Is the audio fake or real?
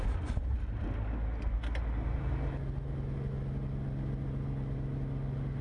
real